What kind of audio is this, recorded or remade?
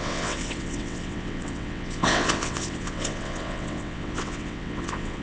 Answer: remade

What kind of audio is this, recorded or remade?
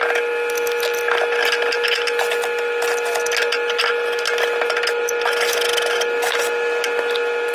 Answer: recorded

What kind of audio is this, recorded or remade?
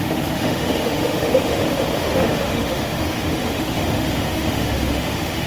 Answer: remade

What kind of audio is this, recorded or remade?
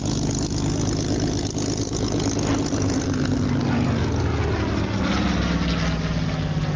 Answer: recorded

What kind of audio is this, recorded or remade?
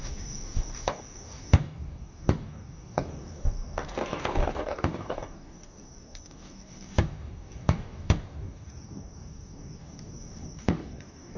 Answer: remade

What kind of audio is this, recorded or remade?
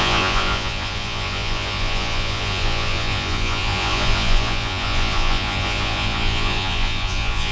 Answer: remade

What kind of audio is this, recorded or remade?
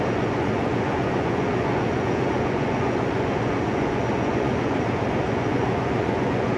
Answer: remade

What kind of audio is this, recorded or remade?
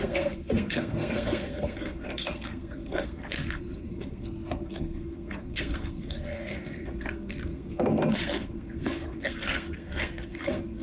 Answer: remade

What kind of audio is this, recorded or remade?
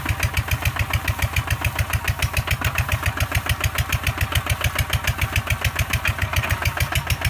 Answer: recorded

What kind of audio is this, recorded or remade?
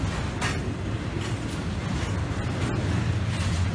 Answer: recorded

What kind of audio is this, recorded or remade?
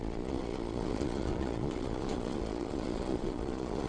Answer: remade